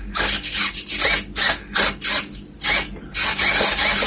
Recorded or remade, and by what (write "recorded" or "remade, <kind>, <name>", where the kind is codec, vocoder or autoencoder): recorded